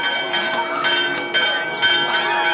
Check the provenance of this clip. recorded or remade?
recorded